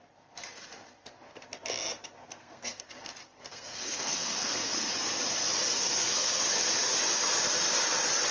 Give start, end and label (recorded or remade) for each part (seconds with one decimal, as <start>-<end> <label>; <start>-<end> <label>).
0.0-2.2 recorded; 2.2-2.8 remade; 2.8-3.5 recorded; 3.5-4.7 remade; 4.7-5.8 recorded; 5.8-6.4 remade; 6.4-8.3 recorded